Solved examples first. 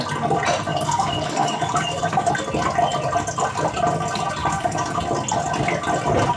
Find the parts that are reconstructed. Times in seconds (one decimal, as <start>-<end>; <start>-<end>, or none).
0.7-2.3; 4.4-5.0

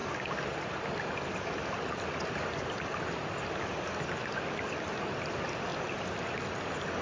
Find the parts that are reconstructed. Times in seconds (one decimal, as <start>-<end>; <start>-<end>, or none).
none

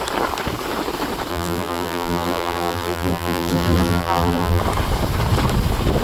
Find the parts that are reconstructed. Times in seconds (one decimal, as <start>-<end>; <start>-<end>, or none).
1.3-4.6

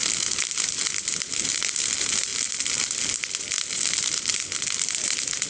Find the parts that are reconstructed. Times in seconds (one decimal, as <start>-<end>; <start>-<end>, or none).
none

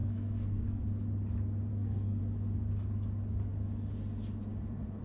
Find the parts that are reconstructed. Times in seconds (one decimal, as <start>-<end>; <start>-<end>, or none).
0.0-0.8; 1.7-2.2

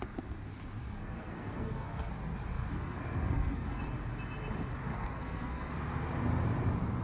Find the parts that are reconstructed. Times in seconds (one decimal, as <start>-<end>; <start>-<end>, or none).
0.8-2.1; 2.5-3.8; 4.9-5.7

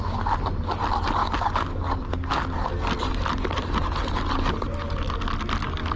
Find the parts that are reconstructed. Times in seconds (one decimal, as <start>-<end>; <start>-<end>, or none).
none